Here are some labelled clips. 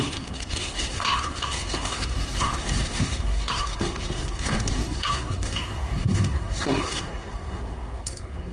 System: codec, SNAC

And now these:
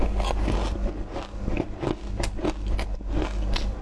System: none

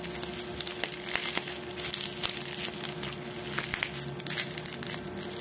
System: none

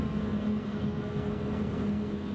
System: codec, SNAC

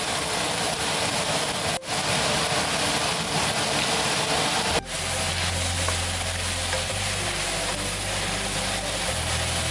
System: none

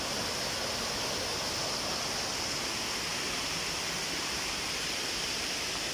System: none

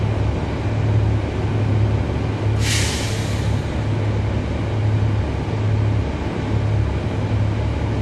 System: none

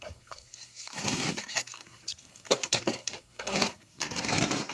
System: codec, SNAC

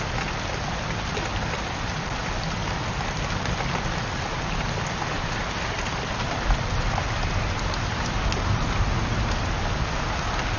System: none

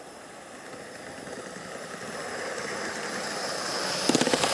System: none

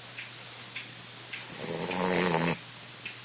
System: none